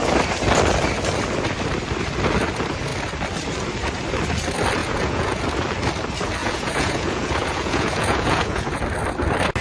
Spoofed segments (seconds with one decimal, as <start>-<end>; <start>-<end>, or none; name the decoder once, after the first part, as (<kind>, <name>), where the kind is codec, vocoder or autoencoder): 4.8-5.4 (vocoder, Vocos); 6.4-8.8